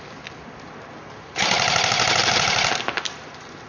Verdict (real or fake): real